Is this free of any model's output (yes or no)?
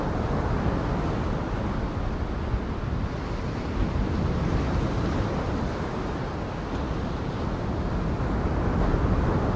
yes